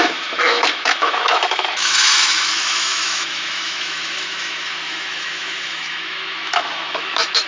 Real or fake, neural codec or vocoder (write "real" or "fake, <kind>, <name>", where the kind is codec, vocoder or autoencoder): fake, autoencoder, DAC-VAE